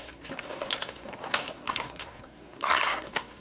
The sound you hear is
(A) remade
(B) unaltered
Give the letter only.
A